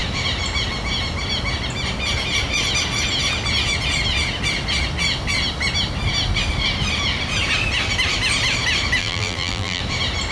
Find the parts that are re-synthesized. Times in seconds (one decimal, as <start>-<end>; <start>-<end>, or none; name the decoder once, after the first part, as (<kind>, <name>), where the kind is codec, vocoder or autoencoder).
9.0-9.8 (vocoder, BigVGAN v2)